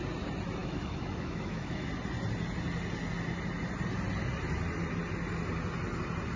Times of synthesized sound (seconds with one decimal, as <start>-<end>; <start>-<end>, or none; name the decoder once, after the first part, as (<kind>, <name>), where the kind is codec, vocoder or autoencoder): 0.6-1.9 (autoencoder, DAC-VAE)